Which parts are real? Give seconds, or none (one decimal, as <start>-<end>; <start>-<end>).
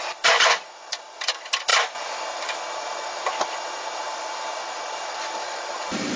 0.0-6.2